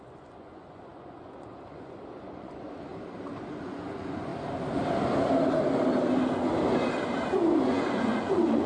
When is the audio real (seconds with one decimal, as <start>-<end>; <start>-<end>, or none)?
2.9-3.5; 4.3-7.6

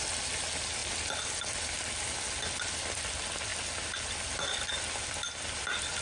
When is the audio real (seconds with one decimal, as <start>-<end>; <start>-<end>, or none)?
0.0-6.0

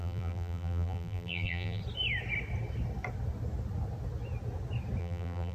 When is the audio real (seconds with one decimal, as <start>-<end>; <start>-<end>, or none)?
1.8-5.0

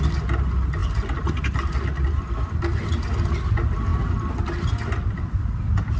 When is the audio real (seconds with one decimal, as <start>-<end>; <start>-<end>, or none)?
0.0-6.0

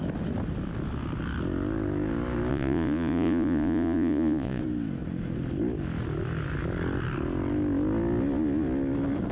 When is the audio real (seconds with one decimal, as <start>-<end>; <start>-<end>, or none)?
0.0-2.5; 4.6-9.3

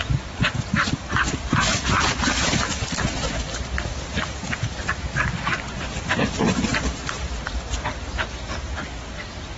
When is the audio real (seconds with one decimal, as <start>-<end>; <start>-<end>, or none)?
none

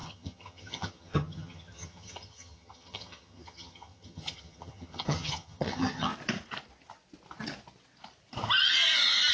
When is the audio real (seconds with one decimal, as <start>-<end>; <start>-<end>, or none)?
6.1-9.3

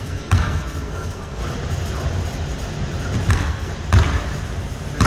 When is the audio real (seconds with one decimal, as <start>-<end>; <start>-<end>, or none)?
1.4-3.3; 3.7-5.1